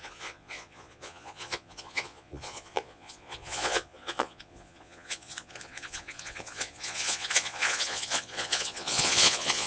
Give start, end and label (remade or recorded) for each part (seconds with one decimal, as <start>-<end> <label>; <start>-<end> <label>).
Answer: 0.0-9.7 remade